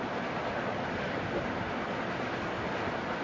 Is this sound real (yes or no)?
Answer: yes